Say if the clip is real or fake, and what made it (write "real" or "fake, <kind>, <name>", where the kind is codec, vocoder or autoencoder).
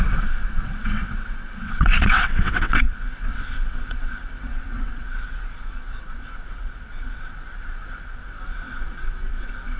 fake, vocoder, WaveNeXt